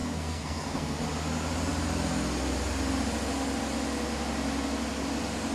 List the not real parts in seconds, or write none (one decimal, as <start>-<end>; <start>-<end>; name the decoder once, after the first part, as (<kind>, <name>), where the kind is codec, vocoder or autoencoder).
0.0-1.0 (codec, SNAC)